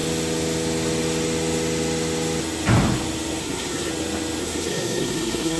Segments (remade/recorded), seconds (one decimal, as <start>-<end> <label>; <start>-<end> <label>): 0.0-3.4 recorded; 3.4-3.9 remade; 3.9-4.4 recorded; 4.4-5.6 remade